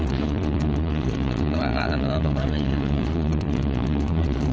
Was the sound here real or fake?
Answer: fake